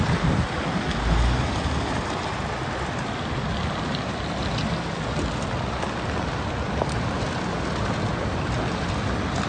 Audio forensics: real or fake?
real